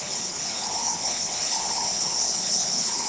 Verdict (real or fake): fake